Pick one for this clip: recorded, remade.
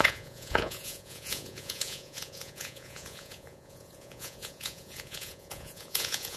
remade